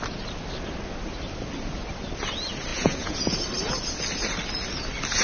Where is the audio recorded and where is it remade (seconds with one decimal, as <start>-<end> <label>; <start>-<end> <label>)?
0.0-2.7 recorded; 2.7-3.4 remade; 3.4-5.2 recorded